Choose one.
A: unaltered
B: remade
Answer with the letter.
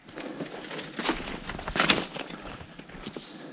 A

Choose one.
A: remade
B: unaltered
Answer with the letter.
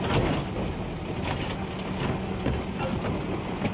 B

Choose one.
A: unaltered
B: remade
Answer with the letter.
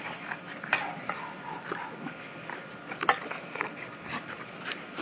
A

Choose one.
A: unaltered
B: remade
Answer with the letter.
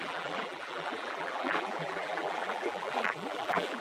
B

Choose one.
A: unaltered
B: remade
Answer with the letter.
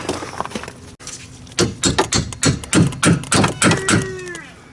A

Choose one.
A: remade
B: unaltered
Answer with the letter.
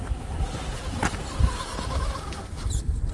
B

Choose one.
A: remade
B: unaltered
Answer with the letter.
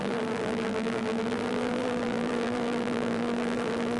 A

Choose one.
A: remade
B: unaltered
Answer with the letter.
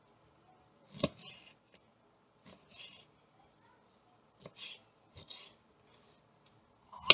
B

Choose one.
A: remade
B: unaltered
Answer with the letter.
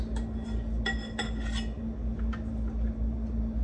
B